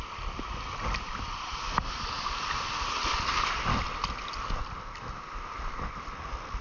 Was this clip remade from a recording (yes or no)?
no